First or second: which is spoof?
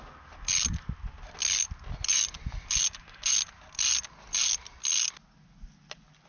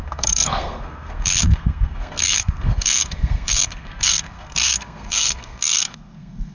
second